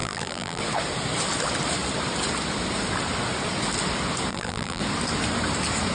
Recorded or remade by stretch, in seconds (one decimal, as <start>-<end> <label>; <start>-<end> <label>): 0.0-0.6 remade; 0.6-4.3 recorded; 4.3-4.8 remade; 4.8-5.9 recorded